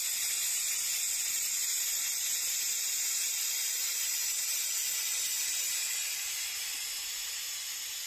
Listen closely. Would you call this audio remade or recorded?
recorded